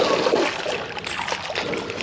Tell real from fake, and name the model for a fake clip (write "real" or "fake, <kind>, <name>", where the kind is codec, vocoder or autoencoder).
real